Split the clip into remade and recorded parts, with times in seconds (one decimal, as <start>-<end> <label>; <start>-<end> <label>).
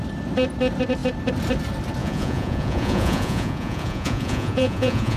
0.0-2.0 recorded; 2.0-5.2 remade